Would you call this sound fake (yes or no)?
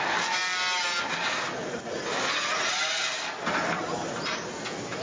no